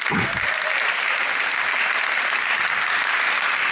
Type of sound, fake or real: real